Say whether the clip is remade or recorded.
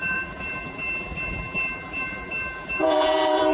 remade